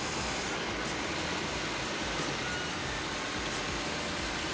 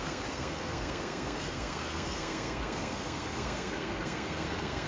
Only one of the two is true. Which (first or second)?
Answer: first